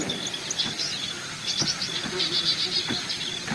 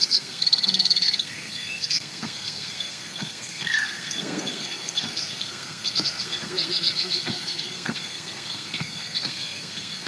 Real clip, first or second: first